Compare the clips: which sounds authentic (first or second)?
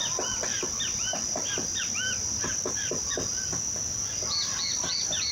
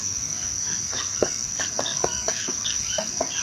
first